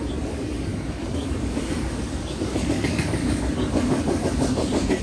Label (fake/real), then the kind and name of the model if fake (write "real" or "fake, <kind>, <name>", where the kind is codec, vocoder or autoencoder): fake, codec, DAC